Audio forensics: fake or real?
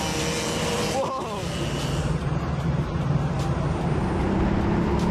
real